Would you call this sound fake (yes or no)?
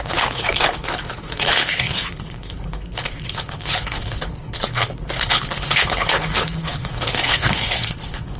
yes